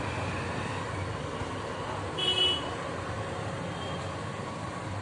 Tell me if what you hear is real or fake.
real